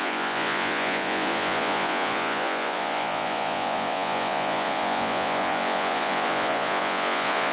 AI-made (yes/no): yes